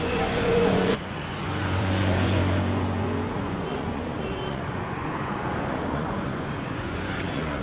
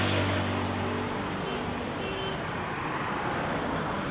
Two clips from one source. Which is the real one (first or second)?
second